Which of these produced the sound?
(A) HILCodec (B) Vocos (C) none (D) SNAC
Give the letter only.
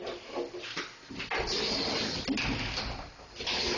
C